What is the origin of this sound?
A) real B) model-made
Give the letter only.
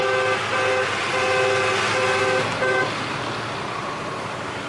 A